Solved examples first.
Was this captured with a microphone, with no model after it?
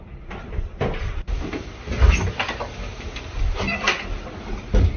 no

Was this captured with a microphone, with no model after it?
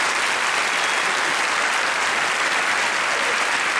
yes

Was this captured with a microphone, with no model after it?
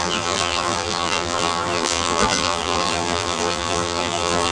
no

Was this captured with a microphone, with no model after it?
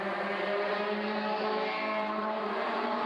no